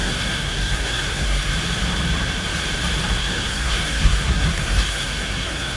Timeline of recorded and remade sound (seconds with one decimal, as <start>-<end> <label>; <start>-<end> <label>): 0.0-1.5 remade; 1.5-3.2 recorded; 3.2-5.8 remade